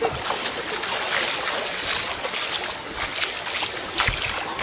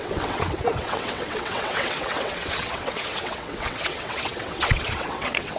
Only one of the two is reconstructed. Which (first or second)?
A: second